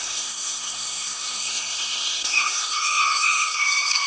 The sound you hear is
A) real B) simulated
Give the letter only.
B